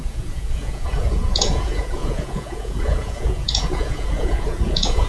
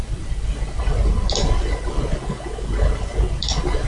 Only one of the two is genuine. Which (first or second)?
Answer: second